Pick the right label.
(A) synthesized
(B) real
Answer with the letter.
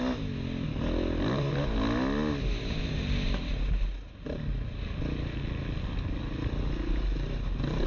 B